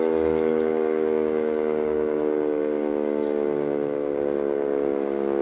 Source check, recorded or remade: remade